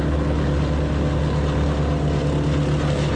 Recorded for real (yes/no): yes